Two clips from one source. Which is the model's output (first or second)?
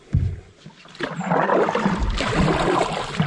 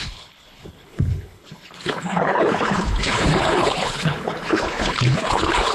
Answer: second